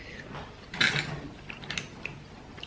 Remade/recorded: recorded